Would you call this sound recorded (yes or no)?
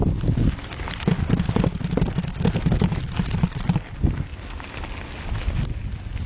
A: yes